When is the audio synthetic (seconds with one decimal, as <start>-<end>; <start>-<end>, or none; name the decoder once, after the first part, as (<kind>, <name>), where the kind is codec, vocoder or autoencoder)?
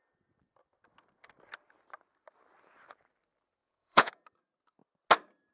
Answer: 3.6-4.1 (vocoder, Vocos)